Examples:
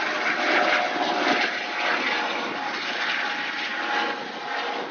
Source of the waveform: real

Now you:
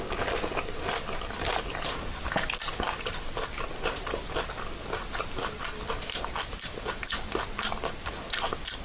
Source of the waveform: real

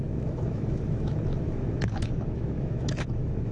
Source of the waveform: fake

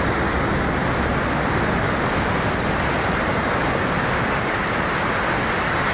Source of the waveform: real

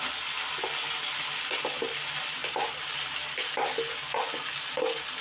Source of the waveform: real